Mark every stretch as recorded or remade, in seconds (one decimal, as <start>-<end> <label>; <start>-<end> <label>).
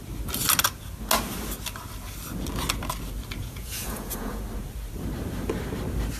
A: 0.0-3.4 recorded; 3.4-4.4 remade; 4.4-6.2 recorded